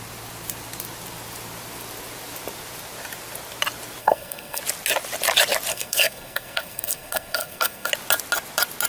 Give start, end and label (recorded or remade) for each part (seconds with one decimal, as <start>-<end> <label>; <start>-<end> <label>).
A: 0.0-4.0 recorded; 4.0-4.6 remade; 4.6-5.7 recorded; 5.7-7.9 remade; 7.9-8.9 recorded